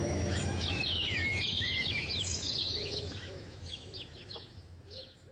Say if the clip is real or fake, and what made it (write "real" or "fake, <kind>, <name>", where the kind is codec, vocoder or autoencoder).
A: fake, autoencoder, DAC-VAE